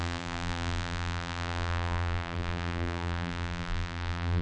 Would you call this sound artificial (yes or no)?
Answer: yes